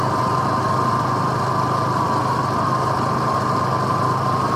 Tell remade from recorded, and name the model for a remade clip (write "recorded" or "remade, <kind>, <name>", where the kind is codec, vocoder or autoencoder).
recorded